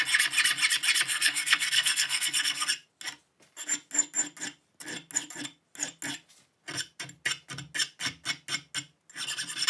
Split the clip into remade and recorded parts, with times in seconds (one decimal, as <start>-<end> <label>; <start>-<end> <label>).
0.0-1.1 recorded; 1.1-2.7 remade; 2.7-9.7 recorded